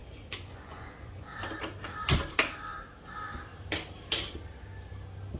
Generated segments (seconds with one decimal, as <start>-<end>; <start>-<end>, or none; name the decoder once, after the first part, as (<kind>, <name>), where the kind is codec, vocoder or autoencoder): 0.0-1.4 (vocoder, Vocos)